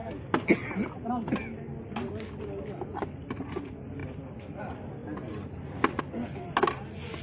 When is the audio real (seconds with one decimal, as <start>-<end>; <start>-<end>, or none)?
0.0-7.2